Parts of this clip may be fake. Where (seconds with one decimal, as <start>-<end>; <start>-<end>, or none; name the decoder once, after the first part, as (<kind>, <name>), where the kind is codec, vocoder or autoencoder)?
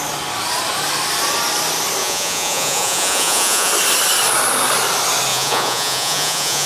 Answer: 2.0-3.7 (vocoder, Vocos); 5.3-6.7